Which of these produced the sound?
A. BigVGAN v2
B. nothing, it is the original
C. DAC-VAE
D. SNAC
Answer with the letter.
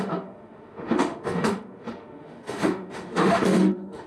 C